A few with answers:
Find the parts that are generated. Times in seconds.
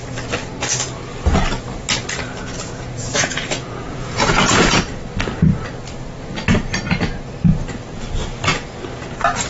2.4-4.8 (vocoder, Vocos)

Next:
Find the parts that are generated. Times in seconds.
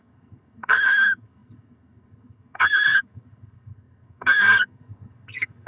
0.0-5.7 (codec, SNAC)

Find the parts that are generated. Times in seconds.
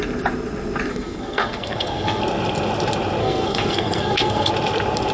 0.9-2.2 (codec, SNAC); 3.2-4.5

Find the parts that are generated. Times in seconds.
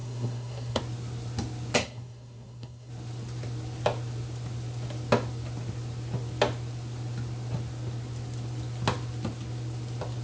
0.0-0.8 (codec, SNAC); 1.8-2.9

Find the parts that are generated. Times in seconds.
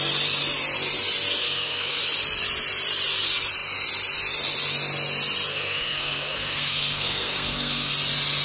1.4-2.0 (codec, SNAC); 5.5-7.9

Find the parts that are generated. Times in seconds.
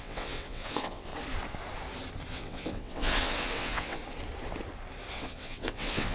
0.0-1.1 (vocoder, WaveNeXt); 2.3-4.0; 5.1-6.1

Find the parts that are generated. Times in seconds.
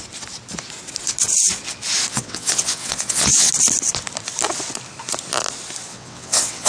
2.1-3.5 (vocoder, WaveNeXt); 5.9-6.7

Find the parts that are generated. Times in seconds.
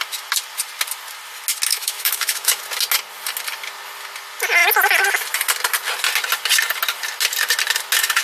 1.7-2.6 (autoencoder, DAC-VAE)